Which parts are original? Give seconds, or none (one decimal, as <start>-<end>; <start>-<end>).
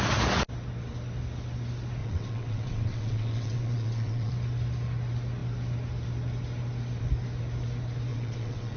0.0-2.0; 4.3-8.1